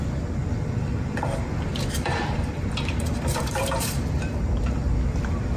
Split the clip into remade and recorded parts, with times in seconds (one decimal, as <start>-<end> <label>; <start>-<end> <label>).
0.0-5.6 remade